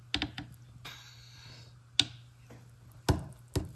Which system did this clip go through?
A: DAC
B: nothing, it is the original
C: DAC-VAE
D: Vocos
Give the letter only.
B